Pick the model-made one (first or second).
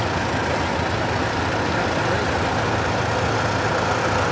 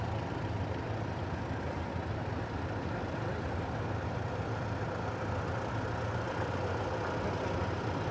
second